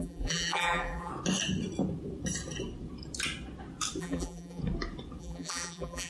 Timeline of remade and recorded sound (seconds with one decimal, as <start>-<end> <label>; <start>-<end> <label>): 0.0-1.1 remade; 1.1-4.0 recorded; 4.0-4.6 remade; 4.6-5.2 recorded; 5.2-6.1 remade